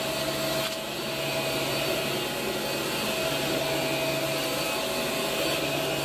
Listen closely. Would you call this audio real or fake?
real